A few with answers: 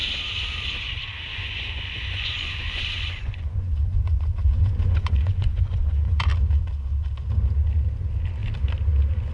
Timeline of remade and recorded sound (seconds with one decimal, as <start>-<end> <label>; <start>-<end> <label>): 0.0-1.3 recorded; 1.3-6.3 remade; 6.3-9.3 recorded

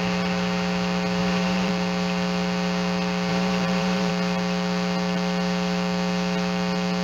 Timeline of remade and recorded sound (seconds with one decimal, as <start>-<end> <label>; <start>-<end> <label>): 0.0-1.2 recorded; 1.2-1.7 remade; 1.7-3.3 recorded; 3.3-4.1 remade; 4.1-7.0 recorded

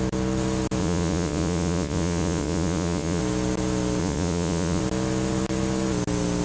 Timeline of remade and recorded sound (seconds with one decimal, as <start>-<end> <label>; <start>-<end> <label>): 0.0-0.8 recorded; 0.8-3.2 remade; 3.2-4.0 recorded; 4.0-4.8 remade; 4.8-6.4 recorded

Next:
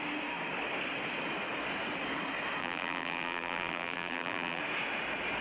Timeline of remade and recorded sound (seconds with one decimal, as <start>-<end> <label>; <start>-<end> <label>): 0.0-2.6 recorded; 2.6-4.6 remade; 4.6-5.4 recorded

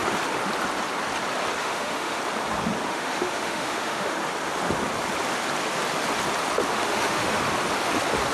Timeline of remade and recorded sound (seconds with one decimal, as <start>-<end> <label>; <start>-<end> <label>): 0.0-1.6 recorded; 1.6-2.2 remade; 2.2-2.9 recorded; 2.9-4.2 remade; 4.2-6.7 recorded; 6.7-7.4 remade; 7.4-8.3 recorded

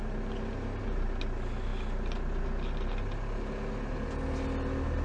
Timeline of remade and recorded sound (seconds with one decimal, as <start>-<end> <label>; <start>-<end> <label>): 0.0-5.0 recorded

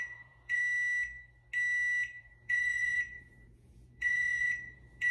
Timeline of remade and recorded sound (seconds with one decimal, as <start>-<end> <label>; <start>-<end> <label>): 0.0-0.6 remade; 0.6-2.2 recorded; 2.2-5.1 remade